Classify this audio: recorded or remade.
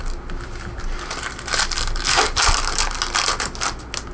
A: recorded